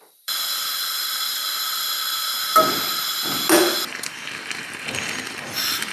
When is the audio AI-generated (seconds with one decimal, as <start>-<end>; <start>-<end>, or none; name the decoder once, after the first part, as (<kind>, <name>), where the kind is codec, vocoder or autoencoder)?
0.0-1.4 (vocoder, BigVGAN v2); 4.9-5.9